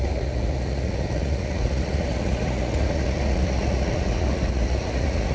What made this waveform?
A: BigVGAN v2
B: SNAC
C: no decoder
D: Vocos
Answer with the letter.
D